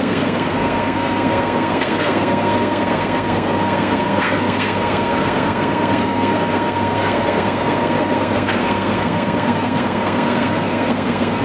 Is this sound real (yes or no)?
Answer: no